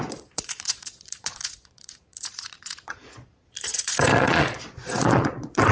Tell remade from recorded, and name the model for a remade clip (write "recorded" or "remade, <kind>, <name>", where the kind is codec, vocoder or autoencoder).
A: remade, vocoder, Vocos